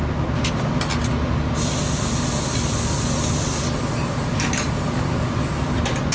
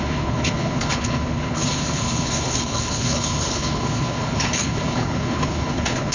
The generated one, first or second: second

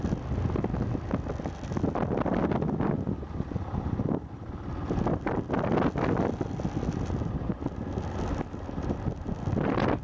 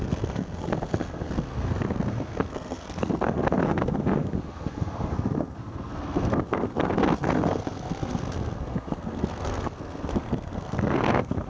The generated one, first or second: second